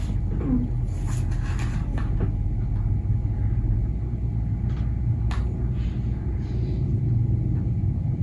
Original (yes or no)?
yes